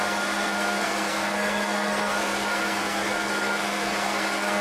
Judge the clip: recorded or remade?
remade